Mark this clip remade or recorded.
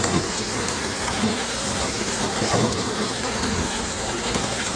remade